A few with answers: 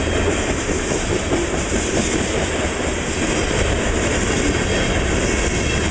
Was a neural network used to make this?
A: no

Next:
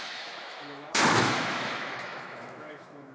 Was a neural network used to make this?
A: yes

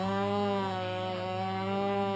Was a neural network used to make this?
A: yes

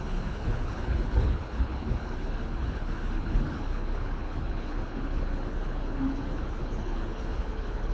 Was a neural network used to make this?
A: yes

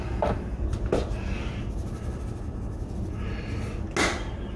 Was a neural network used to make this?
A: no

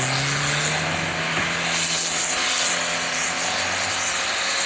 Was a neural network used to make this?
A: no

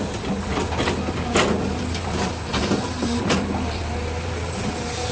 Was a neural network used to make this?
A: no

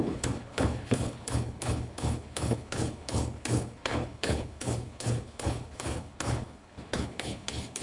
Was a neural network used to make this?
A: yes